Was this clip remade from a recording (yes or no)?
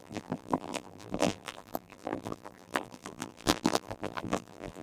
yes